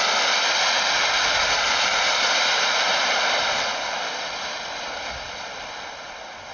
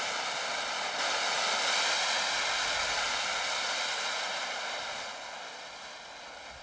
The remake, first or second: first